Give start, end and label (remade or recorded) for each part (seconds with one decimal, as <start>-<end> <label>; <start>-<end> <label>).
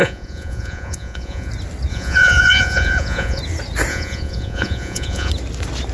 0.0-1.5 remade; 1.5-1.9 recorded; 1.9-3.4 remade; 3.4-3.9 recorded; 3.9-5.3 remade; 5.3-5.9 recorded